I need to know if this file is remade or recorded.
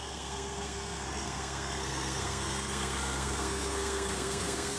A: remade